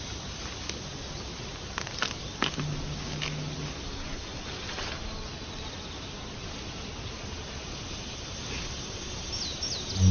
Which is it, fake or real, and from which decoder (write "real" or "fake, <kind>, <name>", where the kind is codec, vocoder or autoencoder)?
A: real